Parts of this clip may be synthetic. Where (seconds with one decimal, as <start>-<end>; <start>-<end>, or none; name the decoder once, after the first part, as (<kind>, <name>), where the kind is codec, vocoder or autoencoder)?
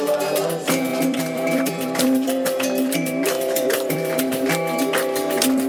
0.9-4.3 (vocoder, BigVGAN v2)